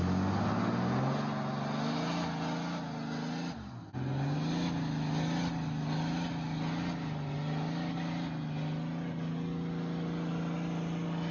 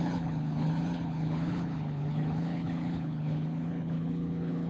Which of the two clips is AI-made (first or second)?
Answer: second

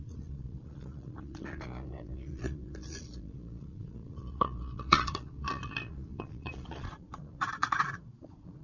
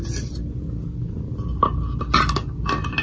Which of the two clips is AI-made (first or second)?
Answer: first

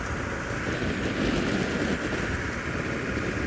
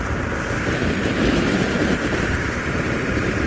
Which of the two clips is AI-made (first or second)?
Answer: second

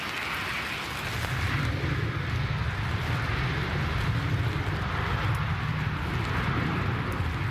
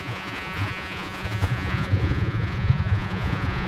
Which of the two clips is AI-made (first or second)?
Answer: second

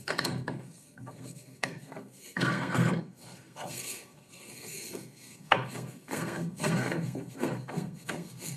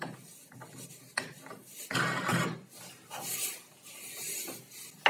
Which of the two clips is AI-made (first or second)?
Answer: first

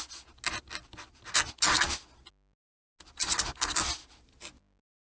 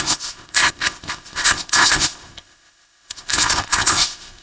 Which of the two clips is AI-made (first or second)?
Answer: second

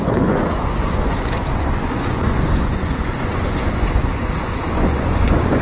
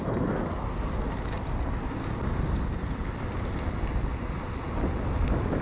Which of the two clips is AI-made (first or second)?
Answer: first